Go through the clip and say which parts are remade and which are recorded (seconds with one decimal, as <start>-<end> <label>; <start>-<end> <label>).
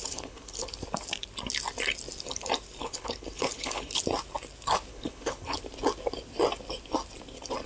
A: 0.0-0.7 remade; 0.7-2.8 recorded; 2.8-4.0 remade; 4.0-4.9 recorded; 4.9-5.6 remade; 5.6-7.7 recorded